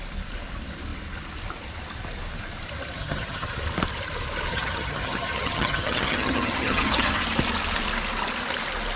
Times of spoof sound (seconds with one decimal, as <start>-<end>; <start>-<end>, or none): 3.0-3.6; 4.5-7.2